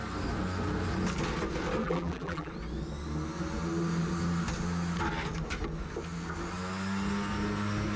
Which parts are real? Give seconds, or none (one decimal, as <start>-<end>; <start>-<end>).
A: 0.0-1.8; 2.5-8.0